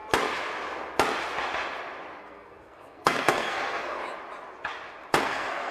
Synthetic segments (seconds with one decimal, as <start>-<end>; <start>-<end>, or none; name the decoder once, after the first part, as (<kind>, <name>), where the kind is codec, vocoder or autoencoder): 2.2-4.0 (codec, SNAC); 5.2-5.7